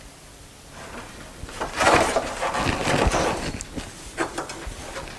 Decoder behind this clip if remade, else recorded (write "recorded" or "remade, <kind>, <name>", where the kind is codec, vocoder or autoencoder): recorded